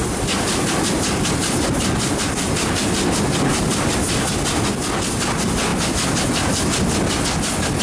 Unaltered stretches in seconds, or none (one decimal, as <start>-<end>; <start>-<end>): 0.0-7.8